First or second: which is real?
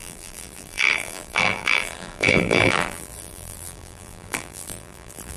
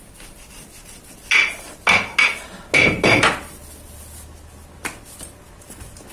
second